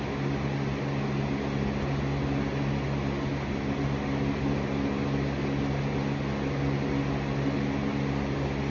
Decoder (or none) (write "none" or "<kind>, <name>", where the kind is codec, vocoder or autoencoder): none